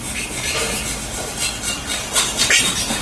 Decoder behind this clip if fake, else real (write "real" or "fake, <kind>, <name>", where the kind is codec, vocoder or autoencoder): real